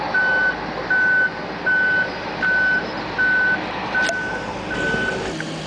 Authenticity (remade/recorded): recorded